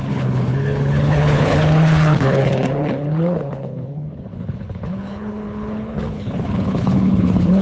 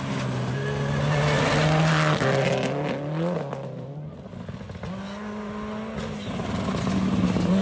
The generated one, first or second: first